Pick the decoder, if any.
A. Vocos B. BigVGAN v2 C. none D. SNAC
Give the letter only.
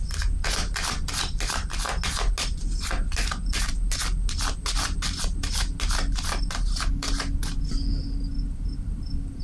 C